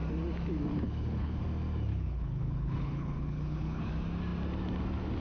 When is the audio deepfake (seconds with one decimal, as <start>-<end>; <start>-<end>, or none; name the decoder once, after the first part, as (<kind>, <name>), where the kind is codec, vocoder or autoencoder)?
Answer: 0.7-1.4 (codec, HILCodec); 1.9-3.9